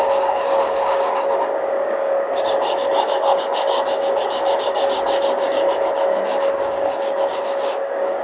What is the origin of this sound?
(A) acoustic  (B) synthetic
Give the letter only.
B